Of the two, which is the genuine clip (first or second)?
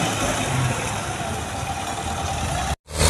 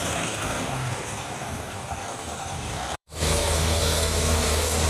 first